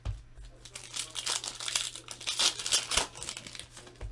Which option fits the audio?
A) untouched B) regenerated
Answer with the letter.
A